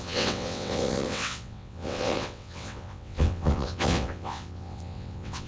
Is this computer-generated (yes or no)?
yes